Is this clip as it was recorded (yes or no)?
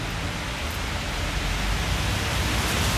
yes